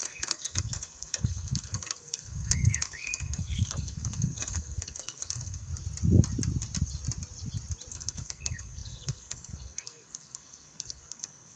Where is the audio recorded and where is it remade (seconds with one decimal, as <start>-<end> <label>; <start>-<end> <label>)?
0.0-5.7 remade; 5.7-7.9 recorded; 7.9-11.6 remade